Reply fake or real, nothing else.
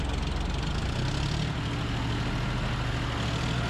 real